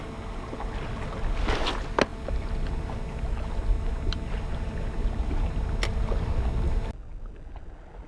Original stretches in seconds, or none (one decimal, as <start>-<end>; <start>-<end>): 0.0-8.1